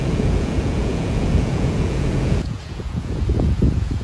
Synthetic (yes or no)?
yes